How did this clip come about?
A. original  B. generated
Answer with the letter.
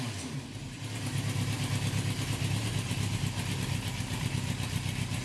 A